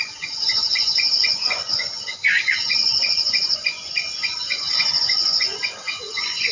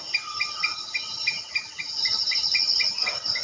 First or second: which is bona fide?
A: second